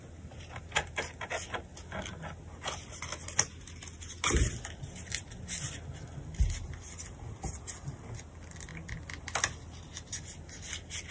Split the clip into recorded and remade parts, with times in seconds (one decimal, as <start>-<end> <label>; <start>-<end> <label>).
0.0-11.1 recorded

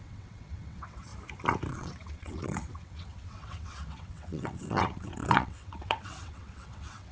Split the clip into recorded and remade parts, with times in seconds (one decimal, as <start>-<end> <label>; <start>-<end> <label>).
0.0-1.1 remade; 1.1-1.7 recorded; 1.7-7.1 remade

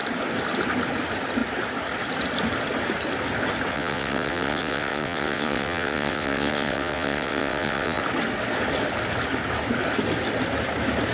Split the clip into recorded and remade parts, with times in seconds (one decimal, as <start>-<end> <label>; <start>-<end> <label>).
0.0-3.7 recorded; 3.7-8.0 remade; 8.0-11.1 recorded

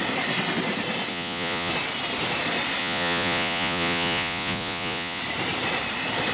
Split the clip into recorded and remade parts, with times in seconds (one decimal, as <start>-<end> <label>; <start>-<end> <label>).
0.0-1.1 recorded; 1.1-1.7 remade; 1.7-2.8 recorded; 2.8-5.2 remade; 5.2-6.3 recorded